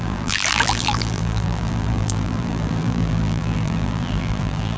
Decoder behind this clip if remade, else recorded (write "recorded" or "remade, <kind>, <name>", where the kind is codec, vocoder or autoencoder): remade, vocoder, BigVGAN v2